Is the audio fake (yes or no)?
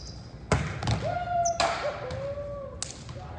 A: no